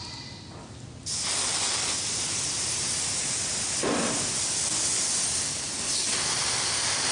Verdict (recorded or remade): recorded